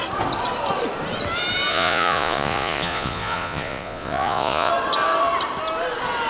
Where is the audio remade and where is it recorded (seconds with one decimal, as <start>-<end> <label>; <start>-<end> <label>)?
0.0-1.7 recorded; 1.7-4.7 remade; 4.7-6.3 recorded